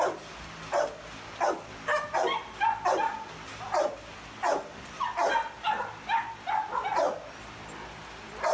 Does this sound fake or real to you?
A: real